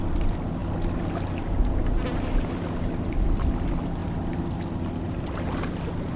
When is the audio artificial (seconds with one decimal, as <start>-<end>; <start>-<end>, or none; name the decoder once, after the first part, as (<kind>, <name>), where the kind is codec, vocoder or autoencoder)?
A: none